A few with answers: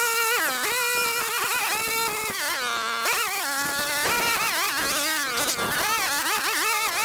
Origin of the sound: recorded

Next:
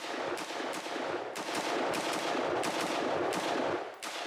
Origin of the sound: recorded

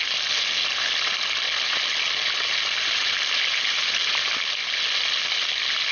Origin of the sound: recorded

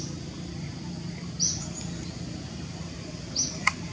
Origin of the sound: recorded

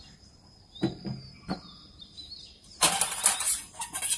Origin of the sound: recorded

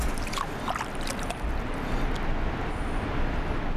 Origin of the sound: recorded